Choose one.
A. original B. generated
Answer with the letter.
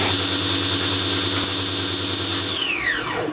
A